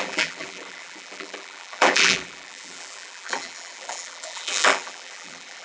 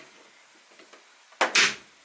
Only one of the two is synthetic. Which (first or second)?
first